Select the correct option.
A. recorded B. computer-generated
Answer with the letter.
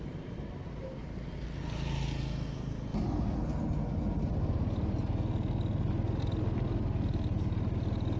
A